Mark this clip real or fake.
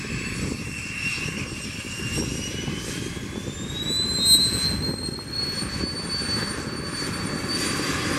real